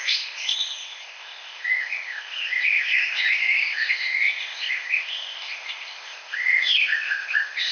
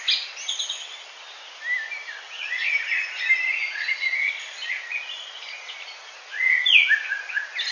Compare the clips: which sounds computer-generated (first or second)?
first